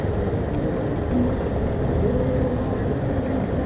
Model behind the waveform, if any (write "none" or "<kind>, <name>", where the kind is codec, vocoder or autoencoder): none